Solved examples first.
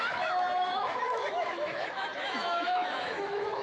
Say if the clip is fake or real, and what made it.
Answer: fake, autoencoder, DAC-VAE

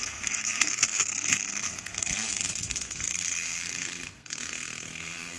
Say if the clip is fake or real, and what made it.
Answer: fake, codec, SNAC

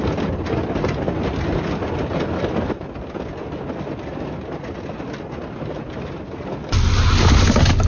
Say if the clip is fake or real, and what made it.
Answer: real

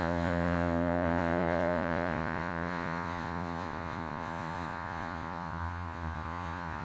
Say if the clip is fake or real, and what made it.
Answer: fake, vocoder, Vocos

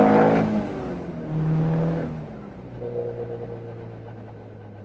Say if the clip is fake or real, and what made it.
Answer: real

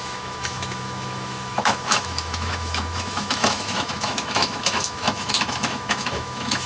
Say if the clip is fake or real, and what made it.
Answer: fake, autoencoder, DAC-VAE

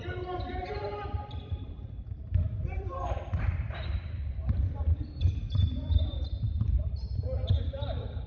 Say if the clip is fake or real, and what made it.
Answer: fake, vocoder, BigVGAN v2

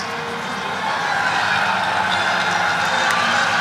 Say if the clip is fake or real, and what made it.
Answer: real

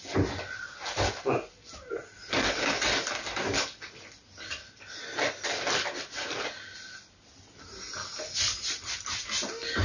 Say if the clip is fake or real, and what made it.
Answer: real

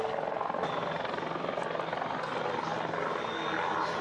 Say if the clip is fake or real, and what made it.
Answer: real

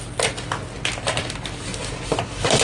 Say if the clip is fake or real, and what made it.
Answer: real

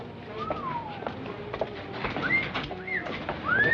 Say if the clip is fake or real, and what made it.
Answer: real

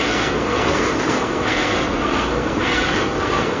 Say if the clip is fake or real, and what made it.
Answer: fake, codec, SNAC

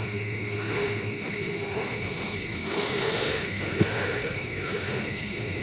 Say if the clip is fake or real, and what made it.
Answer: fake, autoencoder, DAC-VAE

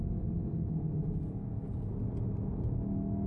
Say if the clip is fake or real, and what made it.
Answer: real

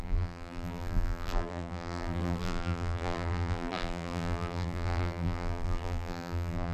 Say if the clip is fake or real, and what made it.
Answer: fake, vocoder, BigVGAN v2